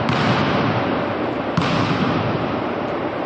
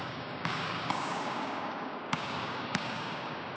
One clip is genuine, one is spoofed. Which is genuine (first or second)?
first